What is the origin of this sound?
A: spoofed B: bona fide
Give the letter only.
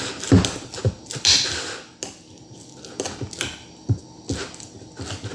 B